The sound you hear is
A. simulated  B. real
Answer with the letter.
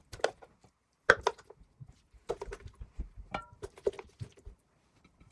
B